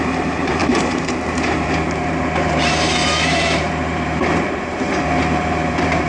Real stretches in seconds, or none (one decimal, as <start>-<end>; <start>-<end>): none